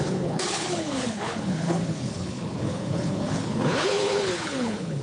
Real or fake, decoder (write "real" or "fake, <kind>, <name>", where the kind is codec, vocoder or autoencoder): fake, codec, HILCodec